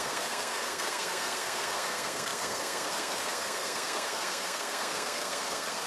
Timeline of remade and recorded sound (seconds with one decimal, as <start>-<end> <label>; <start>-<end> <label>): 0.0-5.9 remade